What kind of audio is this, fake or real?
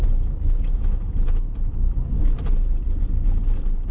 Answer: real